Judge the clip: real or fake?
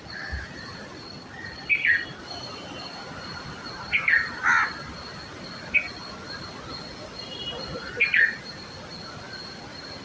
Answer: real